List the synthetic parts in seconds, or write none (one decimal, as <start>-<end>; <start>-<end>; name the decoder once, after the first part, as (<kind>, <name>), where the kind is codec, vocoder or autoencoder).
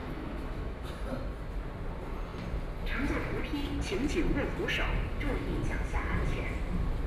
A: 0.0-0.9 (autoencoder, DAC-VAE)